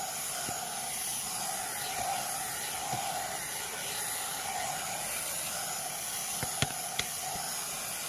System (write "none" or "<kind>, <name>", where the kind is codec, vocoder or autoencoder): none